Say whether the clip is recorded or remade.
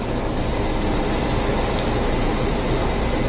recorded